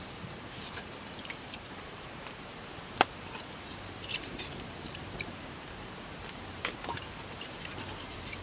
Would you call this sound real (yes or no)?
no